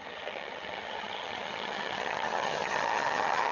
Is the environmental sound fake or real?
fake